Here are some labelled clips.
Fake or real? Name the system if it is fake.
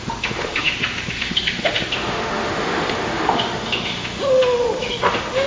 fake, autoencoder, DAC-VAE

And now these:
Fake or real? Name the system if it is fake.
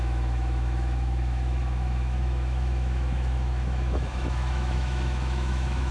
fake, autoencoder, DAC-VAE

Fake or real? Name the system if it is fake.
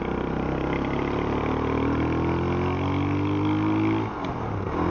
real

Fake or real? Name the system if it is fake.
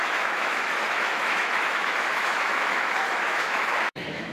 fake, autoencoder, DAC-VAE